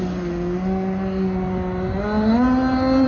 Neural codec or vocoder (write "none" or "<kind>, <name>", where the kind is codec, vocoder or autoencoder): none